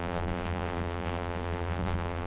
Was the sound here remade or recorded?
remade